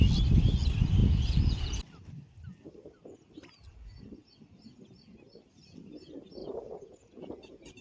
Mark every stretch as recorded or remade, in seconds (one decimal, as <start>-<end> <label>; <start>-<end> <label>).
0.0-1.0 recorded; 1.0-1.8 remade; 1.8-6.4 recorded; 6.4-7.8 remade